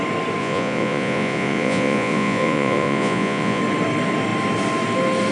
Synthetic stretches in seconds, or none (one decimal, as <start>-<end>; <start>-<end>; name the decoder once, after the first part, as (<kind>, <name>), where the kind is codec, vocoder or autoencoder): 0.4-3.6 (vocoder, Vocos)